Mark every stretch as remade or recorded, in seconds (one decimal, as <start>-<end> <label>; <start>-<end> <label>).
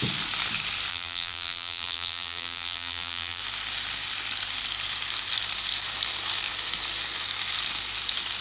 0.0-0.9 recorded; 0.9-3.4 remade; 3.4-8.4 recorded